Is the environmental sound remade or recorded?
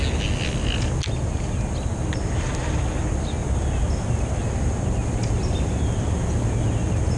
recorded